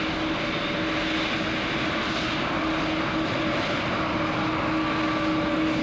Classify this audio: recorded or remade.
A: recorded